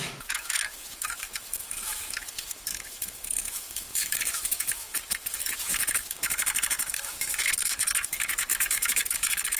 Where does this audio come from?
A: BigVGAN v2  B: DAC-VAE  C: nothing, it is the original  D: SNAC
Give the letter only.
B